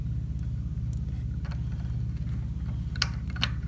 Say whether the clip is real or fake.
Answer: real